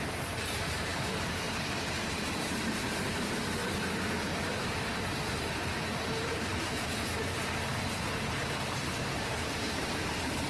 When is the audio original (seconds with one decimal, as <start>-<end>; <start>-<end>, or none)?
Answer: 3.6-4.1; 6.5-8.6